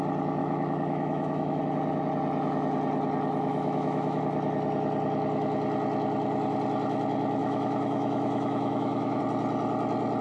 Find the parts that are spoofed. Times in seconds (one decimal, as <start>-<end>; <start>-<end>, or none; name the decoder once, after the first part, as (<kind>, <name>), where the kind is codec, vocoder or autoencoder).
0.4-1.6 (autoencoder, DAC-VAE); 3.5-4.2; 7.4-9.2